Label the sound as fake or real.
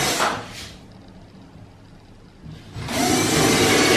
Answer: real